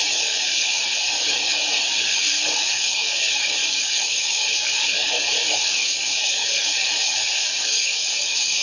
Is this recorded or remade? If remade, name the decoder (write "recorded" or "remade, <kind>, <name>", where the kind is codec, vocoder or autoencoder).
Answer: remade, codec, DAC